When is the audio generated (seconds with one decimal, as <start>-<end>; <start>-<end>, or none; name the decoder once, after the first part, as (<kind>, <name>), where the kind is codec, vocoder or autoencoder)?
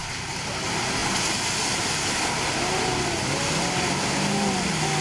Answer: none